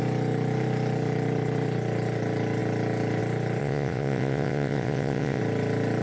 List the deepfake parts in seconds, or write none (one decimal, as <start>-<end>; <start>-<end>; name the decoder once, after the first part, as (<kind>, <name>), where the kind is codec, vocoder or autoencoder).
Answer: 3.6-5.4 (vocoder, WaveNeXt)